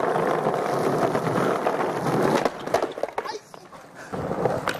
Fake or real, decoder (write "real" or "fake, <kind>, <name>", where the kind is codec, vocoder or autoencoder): real